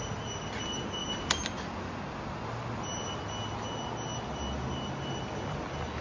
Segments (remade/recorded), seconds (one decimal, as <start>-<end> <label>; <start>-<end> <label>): 0.0-6.0 recorded